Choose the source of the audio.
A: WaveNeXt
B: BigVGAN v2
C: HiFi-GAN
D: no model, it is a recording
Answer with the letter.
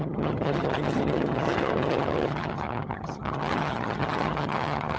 C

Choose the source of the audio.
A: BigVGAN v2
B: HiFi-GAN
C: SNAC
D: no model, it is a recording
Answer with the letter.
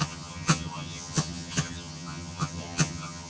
B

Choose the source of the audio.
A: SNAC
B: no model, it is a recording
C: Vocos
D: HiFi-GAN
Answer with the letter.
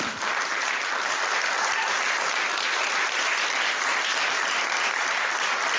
B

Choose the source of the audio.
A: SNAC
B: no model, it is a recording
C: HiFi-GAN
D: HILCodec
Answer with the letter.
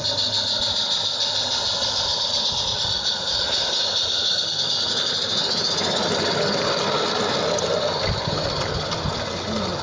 B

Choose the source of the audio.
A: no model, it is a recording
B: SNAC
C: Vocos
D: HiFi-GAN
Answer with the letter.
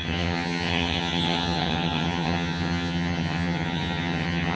D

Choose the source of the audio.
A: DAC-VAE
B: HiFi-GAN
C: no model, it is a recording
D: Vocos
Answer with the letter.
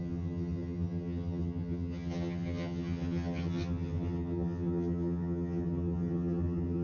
B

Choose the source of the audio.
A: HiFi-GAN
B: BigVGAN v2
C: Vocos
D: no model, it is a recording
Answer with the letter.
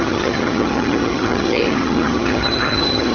A